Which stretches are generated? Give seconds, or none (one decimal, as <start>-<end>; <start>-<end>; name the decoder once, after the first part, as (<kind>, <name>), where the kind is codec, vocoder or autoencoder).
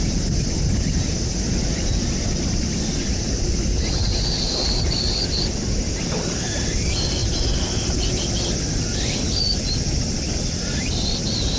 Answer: none